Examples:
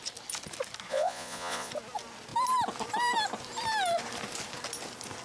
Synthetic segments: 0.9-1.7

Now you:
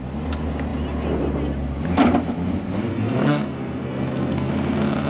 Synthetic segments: 2.9-4.5

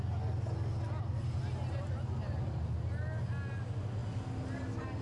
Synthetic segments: none

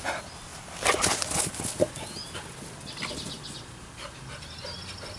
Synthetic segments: none